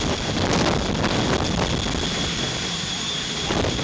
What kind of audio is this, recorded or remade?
recorded